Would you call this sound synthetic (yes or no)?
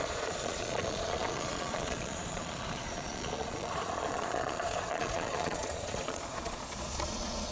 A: yes